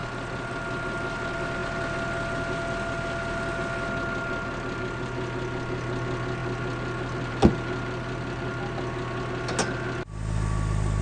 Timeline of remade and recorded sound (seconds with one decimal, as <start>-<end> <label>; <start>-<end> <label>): 0.0-11.0 recorded